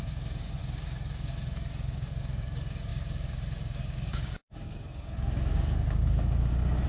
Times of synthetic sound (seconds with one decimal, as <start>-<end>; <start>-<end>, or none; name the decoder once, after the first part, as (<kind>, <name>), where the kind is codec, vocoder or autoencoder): 0.0-6.9 (codec, DAC)

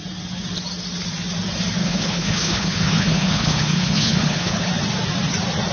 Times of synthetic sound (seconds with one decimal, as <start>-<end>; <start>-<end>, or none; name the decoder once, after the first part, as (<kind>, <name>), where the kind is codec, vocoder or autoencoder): 1.8-4.7 (codec, HILCodec)

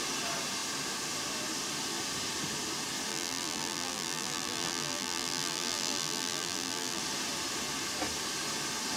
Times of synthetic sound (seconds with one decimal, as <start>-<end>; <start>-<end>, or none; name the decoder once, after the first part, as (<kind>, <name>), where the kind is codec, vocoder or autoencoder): 3.1-7.0 (vocoder, BigVGAN v2)